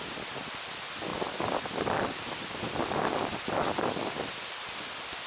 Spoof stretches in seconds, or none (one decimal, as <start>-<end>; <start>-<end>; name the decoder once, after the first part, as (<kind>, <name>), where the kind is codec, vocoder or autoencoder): none